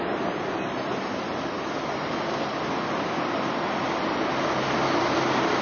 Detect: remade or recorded recorded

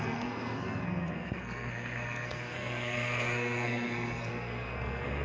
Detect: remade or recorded remade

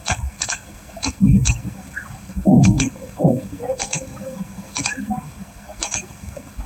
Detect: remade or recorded remade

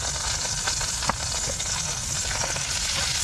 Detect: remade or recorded recorded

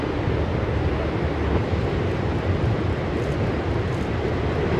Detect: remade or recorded recorded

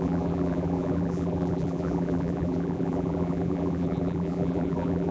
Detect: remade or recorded remade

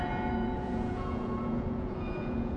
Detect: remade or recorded remade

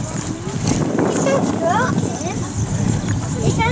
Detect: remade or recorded recorded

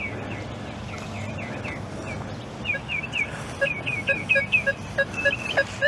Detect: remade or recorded recorded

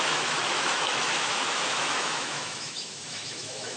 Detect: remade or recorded remade